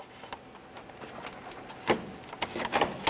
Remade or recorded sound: recorded